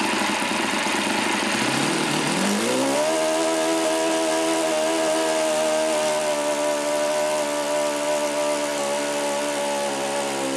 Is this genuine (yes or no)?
yes